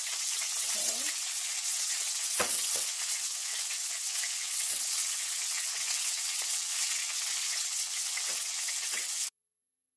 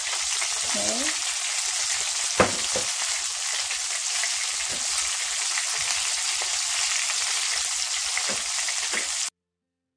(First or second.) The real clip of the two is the second